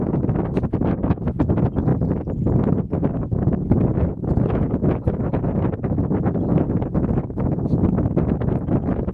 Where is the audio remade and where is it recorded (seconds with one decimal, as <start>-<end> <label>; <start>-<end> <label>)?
0.0-9.1 recorded